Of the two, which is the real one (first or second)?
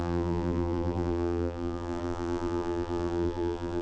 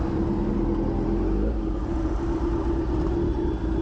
second